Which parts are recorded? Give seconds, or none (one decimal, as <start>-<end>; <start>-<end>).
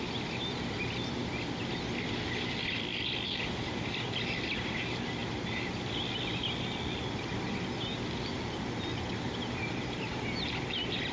0.0-11.1